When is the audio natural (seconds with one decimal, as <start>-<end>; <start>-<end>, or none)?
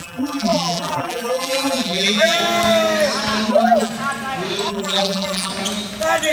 2.4-3.5; 3.9-4.7; 5.5-6.3